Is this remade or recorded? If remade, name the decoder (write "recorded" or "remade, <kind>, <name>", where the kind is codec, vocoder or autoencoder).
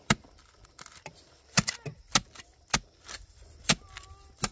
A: recorded